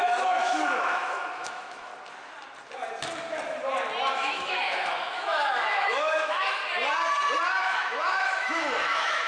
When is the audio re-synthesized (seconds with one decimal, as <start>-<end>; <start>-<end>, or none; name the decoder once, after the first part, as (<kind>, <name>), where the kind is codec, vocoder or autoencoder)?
0.0-1.9 (autoencoder, DAC-VAE); 4.1-6.6; 7.6-9.3